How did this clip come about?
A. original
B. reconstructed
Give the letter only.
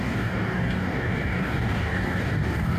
B